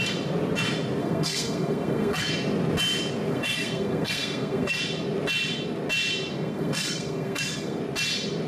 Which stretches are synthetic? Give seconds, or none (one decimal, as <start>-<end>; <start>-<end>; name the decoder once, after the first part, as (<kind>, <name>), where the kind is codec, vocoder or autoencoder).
1.0-2.3 (codec, SNAC); 3.3-4.8; 6.3-7.8